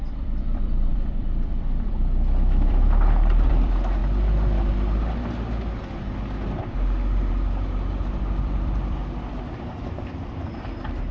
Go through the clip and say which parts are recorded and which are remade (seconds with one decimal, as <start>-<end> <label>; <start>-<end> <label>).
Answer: 0.0-4.0 remade; 4.0-7.3 recorded; 7.3-9.0 remade; 9.0-9.8 recorded; 9.8-11.1 remade